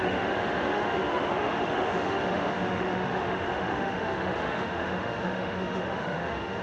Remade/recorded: remade